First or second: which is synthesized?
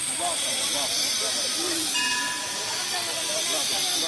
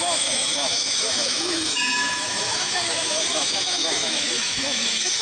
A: second